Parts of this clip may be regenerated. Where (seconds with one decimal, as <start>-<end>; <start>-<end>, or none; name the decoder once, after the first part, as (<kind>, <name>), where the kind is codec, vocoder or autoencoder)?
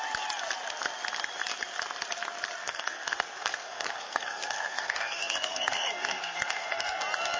2.6-7.0 (codec, SNAC)